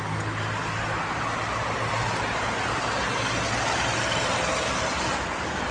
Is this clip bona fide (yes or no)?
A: yes